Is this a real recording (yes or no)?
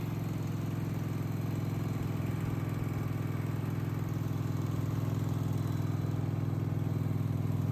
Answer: yes